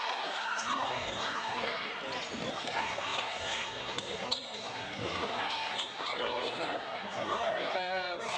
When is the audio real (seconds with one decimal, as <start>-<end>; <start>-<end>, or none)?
1.9-2.5

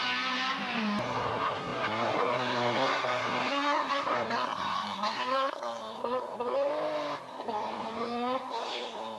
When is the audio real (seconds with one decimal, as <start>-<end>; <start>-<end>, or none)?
0.0-1.0; 6.7-7.3

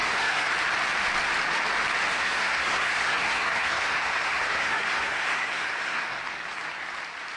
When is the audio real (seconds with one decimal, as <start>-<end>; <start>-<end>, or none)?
0.5-2.1; 6.2-7.4

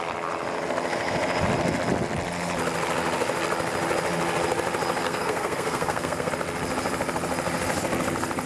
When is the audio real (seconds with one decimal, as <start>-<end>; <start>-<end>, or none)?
0.0-5.0; 6.3-8.5